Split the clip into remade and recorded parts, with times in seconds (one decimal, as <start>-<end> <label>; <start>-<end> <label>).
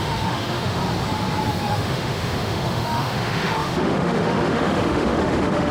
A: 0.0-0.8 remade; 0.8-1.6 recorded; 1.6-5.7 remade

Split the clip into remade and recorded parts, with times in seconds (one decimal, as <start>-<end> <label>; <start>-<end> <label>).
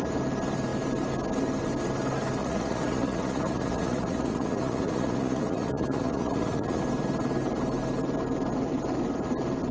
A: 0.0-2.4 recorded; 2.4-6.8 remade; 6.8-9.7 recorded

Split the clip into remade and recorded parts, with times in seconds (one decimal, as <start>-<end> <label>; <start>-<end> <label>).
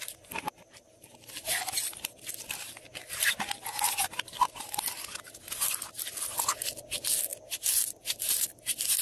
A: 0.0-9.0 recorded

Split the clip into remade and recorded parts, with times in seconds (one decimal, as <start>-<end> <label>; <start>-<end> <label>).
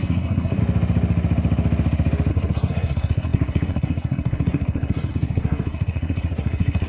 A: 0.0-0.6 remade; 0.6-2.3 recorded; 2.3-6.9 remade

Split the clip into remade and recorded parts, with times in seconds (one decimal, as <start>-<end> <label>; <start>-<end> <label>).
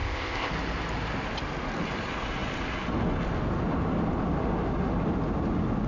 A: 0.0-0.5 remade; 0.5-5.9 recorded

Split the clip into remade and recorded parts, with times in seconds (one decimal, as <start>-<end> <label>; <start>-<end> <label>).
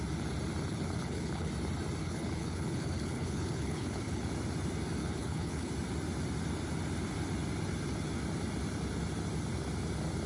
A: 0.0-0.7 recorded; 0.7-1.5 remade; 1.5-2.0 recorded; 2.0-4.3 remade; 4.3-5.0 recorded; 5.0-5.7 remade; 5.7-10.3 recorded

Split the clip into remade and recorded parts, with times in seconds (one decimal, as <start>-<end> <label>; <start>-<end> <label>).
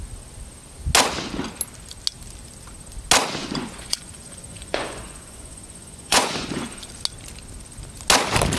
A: 0.0-3.4 recorded; 3.4-6.9 remade; 6.9-8.6 recorded